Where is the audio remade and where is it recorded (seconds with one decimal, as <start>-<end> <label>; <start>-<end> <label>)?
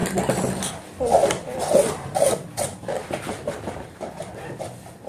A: 0.0-1.2 recorded; 1.2-4.3 remade; 4.3-5.1 recorded